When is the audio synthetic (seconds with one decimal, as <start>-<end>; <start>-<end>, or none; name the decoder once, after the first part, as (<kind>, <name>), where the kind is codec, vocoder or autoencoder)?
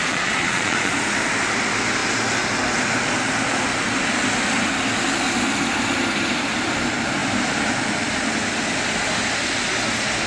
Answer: 0.0-0.9 (vocoder, Vocos)